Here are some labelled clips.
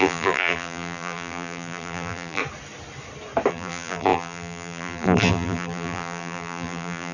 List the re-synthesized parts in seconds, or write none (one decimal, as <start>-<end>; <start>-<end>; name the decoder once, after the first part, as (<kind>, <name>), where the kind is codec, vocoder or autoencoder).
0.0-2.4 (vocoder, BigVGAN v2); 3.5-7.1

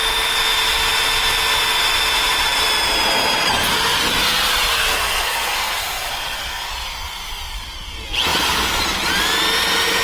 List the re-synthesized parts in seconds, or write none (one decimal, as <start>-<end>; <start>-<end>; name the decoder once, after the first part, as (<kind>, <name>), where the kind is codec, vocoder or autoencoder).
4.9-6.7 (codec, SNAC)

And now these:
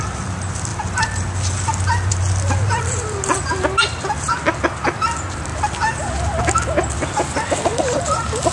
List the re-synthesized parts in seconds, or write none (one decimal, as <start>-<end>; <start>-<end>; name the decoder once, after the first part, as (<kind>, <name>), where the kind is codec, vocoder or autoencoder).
none

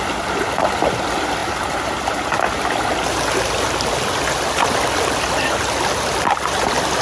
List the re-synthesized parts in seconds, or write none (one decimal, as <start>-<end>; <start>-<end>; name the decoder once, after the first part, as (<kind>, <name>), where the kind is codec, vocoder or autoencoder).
none

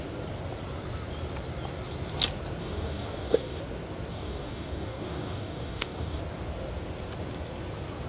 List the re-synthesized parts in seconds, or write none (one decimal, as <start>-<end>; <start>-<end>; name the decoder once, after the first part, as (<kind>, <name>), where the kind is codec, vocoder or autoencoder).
2.6-3.6 (codec, DAC); 4.1-6.2